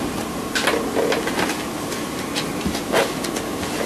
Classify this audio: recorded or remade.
recorded